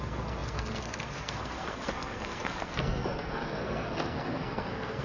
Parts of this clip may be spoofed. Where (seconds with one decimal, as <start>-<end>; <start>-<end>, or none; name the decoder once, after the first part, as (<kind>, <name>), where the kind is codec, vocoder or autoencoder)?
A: 0.0-5.0 (codec, SNAC)